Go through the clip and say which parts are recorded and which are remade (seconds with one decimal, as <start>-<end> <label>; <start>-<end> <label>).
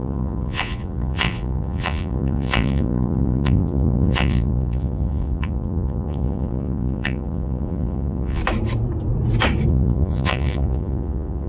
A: 0.0-8.4 remade; 8.4-9.7 recorded; 9.7-11.5 remade